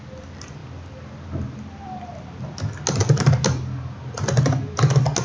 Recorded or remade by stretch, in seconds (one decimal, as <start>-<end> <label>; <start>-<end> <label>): 0.0-5.2 recorded